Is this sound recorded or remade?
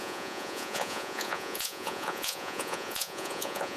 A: remade